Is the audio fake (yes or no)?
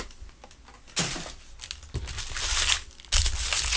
no